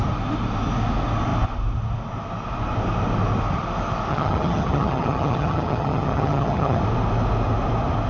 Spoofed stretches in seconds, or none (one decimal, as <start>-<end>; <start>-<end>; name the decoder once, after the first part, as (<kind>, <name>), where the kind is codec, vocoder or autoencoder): 4.1-6.8 (vocoder, HiFi-GAN)